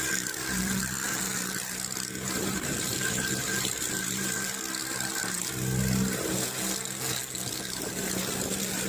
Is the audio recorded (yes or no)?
yes